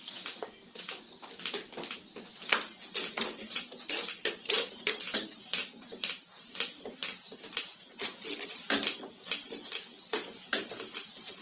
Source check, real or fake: real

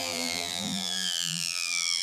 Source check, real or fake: fake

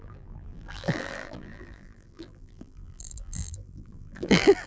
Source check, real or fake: fake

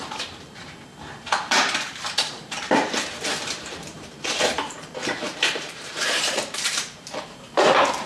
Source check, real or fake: fake